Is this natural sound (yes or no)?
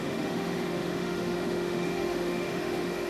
no